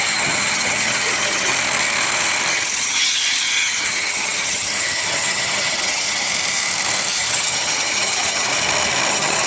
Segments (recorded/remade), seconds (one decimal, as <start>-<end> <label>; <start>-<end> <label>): 0.0-1.5 remade; 1.5-2.5 recorded; 2.5-6.3 remade; 6.3-7.1 recorded; 7.1-8.5 remade; 8.5-9.1 recorded; 9.1-9.5 remade